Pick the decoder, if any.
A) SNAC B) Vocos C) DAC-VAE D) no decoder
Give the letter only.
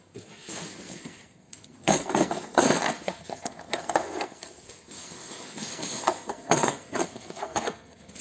A